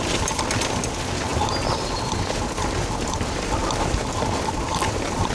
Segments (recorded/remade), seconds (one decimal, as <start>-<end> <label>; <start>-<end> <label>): 0.0-5.3 recorded